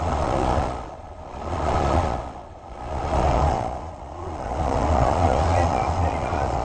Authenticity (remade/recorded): remade